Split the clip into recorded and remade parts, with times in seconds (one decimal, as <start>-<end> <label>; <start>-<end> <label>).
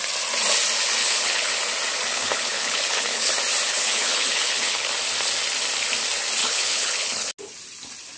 0.0-1.0 recorded; 1.0-1.5 remade; 1.5-2.1 recorded; 2.1-3.3 remade; 3.3-3.7 recorded; 3.7-4.9 remade; 4.9-6.4 recorded; 6.4-7.3 remade; 7.3-8.2 recorded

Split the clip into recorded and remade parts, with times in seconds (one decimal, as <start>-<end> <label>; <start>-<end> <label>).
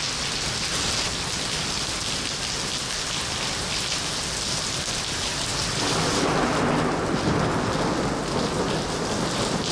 0.0-5.5 recorded; 5.5-6.2 remade; 6.2-9.7 recorded